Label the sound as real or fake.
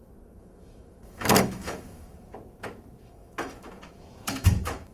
fake